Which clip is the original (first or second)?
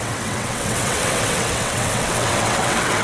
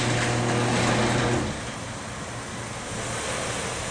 second